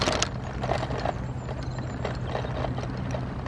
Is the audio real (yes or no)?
yes